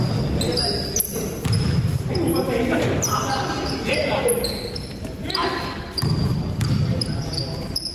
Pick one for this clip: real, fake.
real